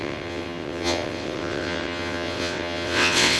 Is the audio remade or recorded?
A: remade